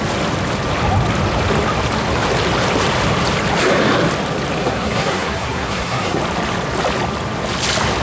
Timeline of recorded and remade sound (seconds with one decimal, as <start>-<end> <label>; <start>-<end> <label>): 0.0-4.6 recorded; 4.6-6.2 remade; 6.2-8.0 recorded